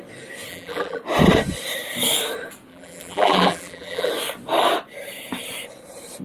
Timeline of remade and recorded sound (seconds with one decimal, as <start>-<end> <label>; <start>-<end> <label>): 0.0-0.5 recorded; 0.5-1.0 remade; 1.0-2.7 recorded; 2.7-4.1 remade; 4.1-6.2 recorded